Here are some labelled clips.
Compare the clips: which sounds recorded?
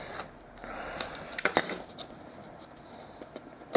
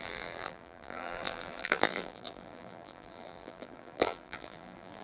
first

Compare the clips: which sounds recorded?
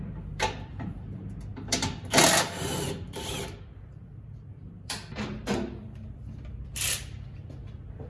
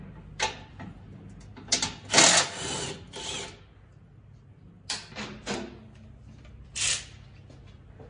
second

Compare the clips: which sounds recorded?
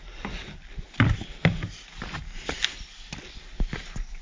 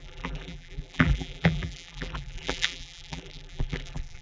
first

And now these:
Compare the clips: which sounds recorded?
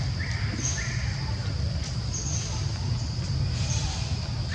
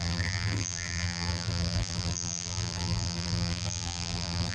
first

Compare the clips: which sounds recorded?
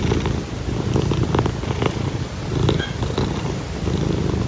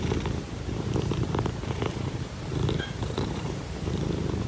first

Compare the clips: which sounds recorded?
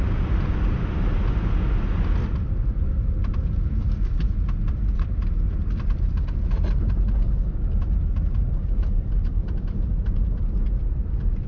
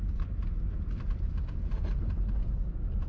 first